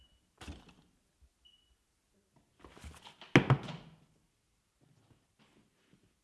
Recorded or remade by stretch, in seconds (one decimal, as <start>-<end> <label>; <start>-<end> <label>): 0.0-6.2 recorded